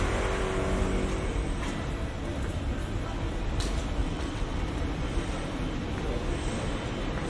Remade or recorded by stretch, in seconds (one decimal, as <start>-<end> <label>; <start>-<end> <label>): 0.0-4.0 recorded; 4.0-4.6 remade; 4.6-7.3 recorded